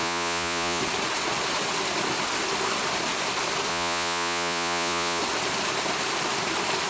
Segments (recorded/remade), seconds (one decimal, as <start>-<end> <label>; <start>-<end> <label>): 0.0-0.8 remade; 0.8-3.7 recorded; 3.7-5.2 remade; 5.2-6.9 recorded